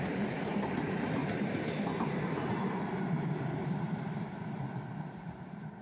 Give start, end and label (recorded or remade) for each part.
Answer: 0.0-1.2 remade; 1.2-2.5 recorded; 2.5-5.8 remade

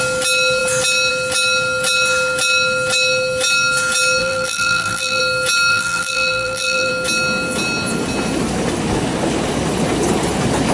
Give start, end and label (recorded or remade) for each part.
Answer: 0.0-4.2 recorded; 4.2-5.2 remade; 5.2-5.7 recorded; 5.7-6.9 remade; 6.9-10.7 recorded

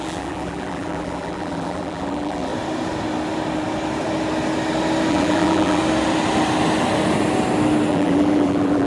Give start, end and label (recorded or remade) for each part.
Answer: 0.0-2.5 remade; 2.5-5.1 recorded; 5.1-5.8 remade; 5.8-7.9 recorded; 7.9-8.9 remade

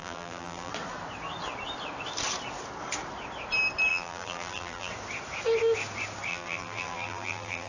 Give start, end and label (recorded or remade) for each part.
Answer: 0.0-0.7 remade; 0.7-3.9 recorded; 3.9-4.9 remade; 4.9-6.3 recorded; 6.3-7.7 remade

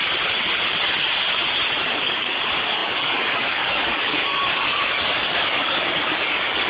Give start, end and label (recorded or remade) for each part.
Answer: 0.0-1.9 recorded; 1.9-6.7 remade

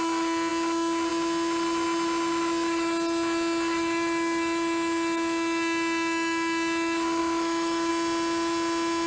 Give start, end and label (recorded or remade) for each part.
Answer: 0.0-7.2 recorded; 7.2-7.9 remade; 7.9-9.1 recorded

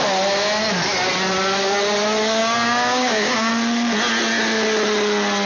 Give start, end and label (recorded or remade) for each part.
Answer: 0.0-2.4 recorded; 2.4-3.5 remade; 3.5-5.5 recorded